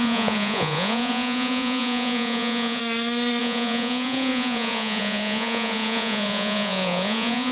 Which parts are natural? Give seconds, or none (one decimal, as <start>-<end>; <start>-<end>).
2.8-3.4